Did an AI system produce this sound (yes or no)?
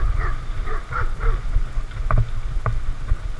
no